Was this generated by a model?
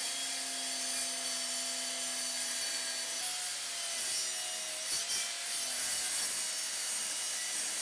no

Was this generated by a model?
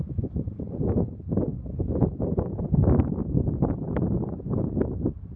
no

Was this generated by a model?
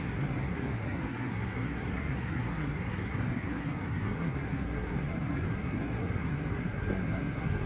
yes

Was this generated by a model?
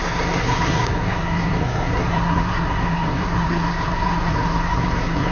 yes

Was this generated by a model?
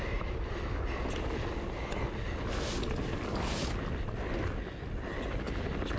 no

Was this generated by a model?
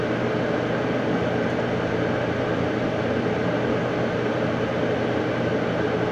no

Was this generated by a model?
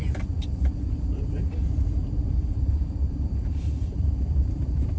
yes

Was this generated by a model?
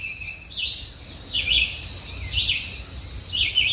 no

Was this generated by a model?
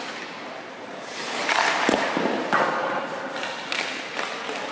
no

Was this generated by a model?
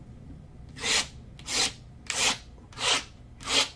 no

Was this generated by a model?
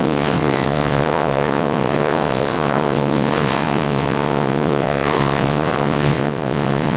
yes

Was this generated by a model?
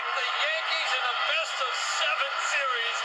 no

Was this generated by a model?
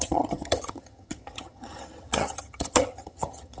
yes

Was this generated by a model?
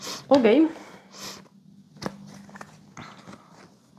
no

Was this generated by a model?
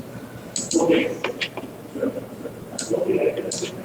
yes